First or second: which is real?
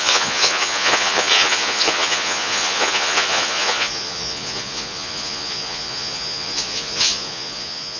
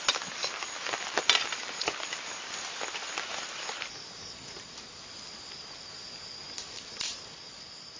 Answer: second